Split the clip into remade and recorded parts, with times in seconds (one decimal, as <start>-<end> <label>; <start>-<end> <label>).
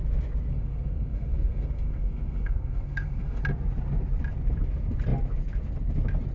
0.0-0.5 recorded; 0.5-3.4 remade; 3.4-6.3 recorded